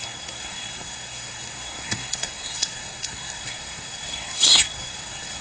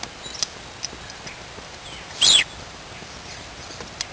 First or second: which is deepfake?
first